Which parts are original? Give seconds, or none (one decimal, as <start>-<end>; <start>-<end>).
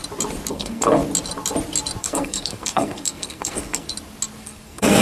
0.0-0.5; 1.0-2.0; 3.9-4.4